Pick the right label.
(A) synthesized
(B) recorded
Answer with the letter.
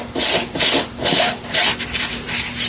B